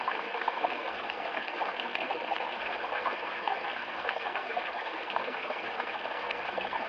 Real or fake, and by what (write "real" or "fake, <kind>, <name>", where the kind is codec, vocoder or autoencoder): fake, codec, SNAC